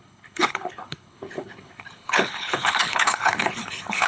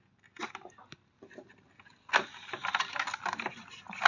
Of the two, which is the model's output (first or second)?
first